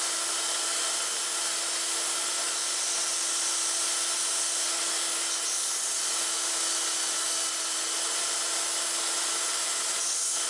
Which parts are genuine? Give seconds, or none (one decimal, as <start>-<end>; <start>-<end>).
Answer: 0.0-10.5